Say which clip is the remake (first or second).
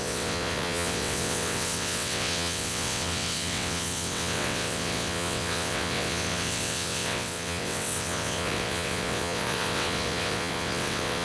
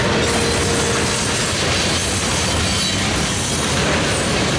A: first